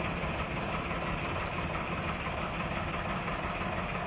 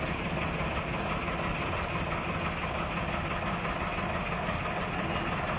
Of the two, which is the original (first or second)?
second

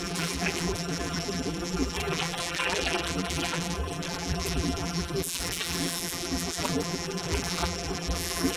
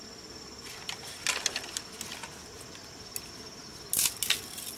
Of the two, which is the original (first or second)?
second